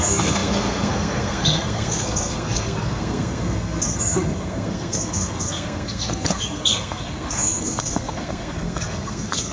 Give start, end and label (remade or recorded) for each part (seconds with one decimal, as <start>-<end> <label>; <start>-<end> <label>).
0.0-9.5 remade